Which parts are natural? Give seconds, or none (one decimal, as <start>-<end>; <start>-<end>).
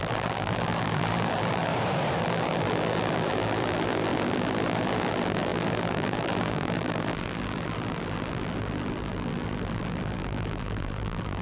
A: 1.7-2.2